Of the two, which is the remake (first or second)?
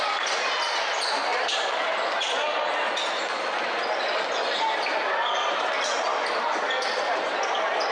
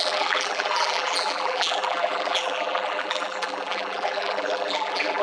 second